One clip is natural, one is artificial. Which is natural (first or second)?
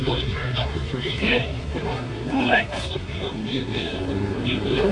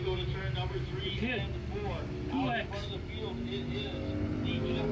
second